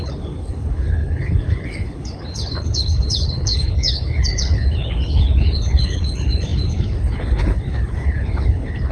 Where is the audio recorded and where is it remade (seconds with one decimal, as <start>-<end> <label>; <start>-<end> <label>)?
0.0-8.9 remade